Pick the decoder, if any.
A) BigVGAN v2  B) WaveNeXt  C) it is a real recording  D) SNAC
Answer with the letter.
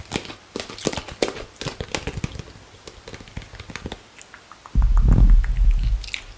C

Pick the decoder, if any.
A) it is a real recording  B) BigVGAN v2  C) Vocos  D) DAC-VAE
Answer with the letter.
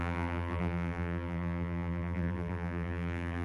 B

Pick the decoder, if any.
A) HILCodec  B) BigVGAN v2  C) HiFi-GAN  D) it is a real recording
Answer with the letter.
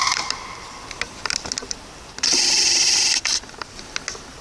D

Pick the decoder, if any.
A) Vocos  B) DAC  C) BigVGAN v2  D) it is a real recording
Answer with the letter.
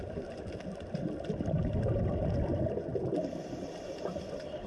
C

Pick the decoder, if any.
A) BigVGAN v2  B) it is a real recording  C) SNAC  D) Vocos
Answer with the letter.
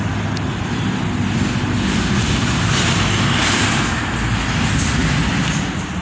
B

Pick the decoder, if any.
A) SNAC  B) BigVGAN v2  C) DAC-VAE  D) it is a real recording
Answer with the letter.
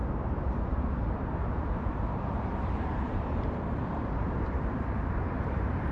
B